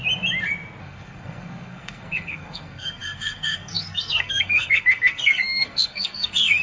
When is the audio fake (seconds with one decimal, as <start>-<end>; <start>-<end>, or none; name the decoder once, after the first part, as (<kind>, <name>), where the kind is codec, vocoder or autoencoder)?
0.8-6.6 (codec, SNAC)